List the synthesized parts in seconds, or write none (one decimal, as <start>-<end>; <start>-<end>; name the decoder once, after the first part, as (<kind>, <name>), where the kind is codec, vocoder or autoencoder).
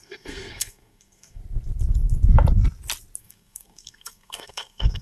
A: 0.0-1.4 (codec, SNAC); 3.2-5.0